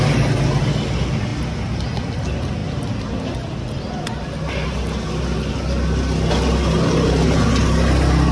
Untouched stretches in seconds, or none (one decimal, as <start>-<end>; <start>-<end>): 0.0-8.3